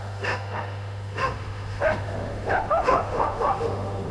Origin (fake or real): fake